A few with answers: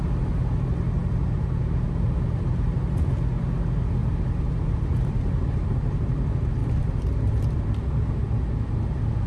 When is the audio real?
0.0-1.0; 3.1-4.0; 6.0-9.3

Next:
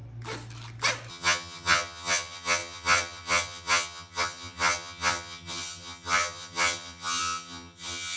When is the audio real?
0.0-1.1

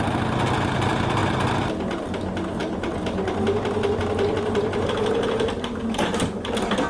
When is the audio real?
0.0-6.9

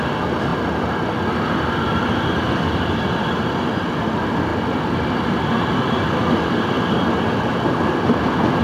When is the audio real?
0.0-8.6

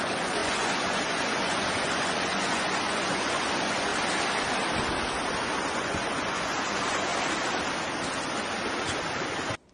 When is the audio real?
3.9-5.7; 7.1-9.7

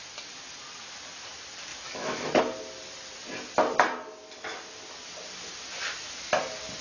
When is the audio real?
0.0-1.7; 2.4-6.8

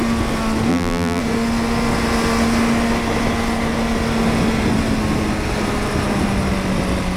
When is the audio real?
0.0-0.7; 1.2-7.2

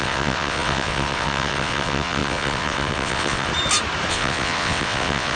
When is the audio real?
3.5-4.1